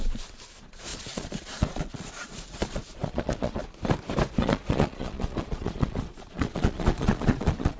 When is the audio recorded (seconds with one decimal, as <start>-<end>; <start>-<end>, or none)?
0.0-0.5; 3.6-4.4